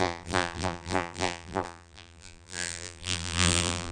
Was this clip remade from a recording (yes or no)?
yes